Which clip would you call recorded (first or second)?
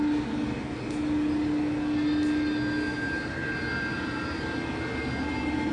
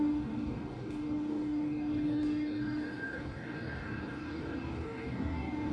first